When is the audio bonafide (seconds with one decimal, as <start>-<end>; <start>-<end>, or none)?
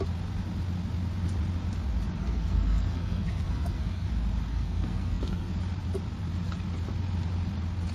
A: 0.0-2.2; 4.1-4.5; 5.6-7.9